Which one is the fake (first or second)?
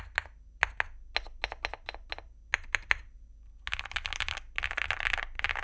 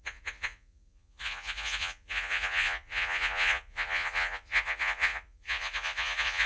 second